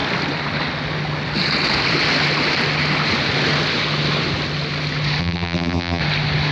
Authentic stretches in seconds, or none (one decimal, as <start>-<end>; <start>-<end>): 0.0-5.2; 6.0-6.5